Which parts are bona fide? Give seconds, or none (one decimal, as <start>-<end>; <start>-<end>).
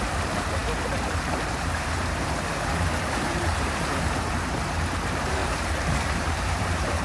none